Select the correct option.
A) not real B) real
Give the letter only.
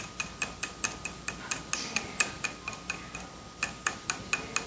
B